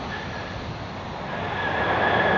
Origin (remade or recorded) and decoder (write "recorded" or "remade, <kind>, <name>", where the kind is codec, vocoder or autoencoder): recorded